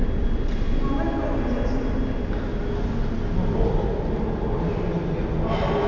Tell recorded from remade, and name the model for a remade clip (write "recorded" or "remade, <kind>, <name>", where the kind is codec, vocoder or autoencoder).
recorded